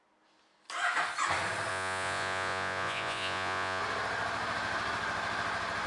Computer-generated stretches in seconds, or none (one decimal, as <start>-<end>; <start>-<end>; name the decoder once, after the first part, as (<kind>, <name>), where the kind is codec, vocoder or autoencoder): 1.7-3.8 (vocoder, Vocos)